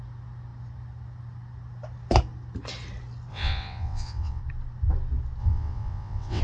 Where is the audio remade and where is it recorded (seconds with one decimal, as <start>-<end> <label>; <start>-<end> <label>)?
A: 0.0-3.3 recorded; 3.3-4.4 remade; 4.4-5.4 recorded; 5.4-6.4 remade